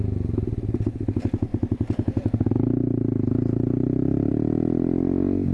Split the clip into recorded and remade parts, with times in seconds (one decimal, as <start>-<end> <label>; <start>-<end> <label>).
0.0-5.5 recorded